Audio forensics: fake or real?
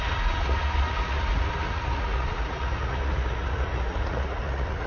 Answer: fake